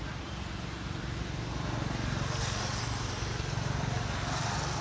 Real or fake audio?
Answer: real